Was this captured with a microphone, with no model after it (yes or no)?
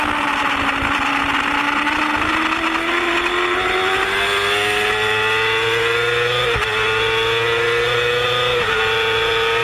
yes